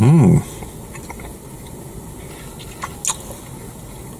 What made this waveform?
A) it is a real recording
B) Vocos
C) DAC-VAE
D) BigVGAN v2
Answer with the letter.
A